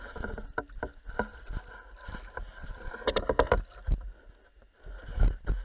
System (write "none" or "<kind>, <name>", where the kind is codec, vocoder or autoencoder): none